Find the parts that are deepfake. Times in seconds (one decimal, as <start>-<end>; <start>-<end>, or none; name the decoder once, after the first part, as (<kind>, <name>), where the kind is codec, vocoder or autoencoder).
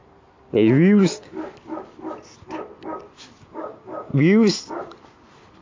3.4-4.1 (codec, DAC)